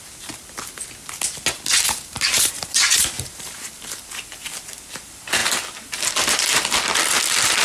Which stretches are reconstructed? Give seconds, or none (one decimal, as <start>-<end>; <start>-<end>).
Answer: 2.1-3.7